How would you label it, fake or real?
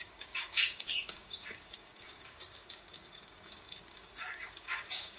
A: fake